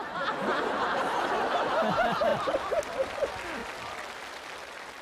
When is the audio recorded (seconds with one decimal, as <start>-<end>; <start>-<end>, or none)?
0.0-2.3; 3.1-3.6; 4.2-5.0

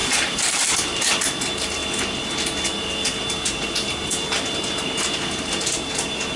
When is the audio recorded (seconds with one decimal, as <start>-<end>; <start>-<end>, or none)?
1.4-6.4

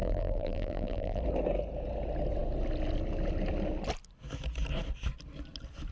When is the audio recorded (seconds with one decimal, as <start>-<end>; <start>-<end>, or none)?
1.2-5.9